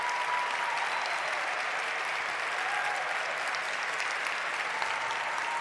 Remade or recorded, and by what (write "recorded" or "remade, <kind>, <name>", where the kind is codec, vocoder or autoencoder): recorded